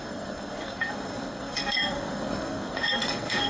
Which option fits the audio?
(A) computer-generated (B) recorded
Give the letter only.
A